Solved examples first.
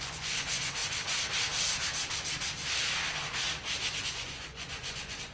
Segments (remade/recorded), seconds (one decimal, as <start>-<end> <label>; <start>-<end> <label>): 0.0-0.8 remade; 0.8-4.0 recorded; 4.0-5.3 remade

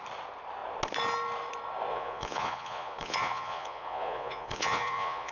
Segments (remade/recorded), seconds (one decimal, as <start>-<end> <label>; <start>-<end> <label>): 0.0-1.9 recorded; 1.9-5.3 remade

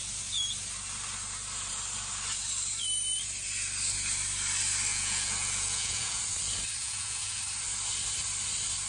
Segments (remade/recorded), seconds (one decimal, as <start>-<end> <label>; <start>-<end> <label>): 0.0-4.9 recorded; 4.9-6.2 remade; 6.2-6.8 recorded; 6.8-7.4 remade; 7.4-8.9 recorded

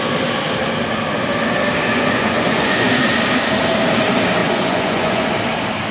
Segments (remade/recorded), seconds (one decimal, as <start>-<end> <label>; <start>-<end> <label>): 0.0-1.9 recorded; 1.9-2.9 remade; 2.9-4.4 recorded; 4.4-5.3 remade; 5.3-5.9 recorded

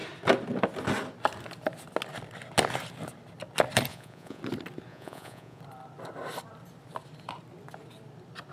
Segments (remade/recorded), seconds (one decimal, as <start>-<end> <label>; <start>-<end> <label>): 0.0-3.9 recorded; 3.9-4.4 remade; 4.4-4.9 recorded; 4.9-5.6 remade; 5.6-8.5 recorded

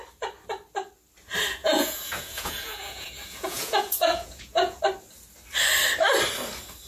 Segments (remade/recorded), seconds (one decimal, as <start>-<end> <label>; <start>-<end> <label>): 0.0-1.6 recorded; 1.6-4.8 remade; 4.8-6.9 recorded